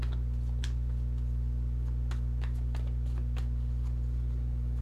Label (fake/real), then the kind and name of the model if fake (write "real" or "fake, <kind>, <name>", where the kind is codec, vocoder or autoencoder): real